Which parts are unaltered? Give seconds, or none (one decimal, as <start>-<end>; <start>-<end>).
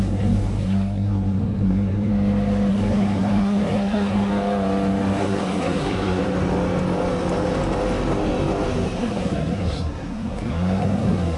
2.1-2.7; 4.3-5.2; 6.2-9.0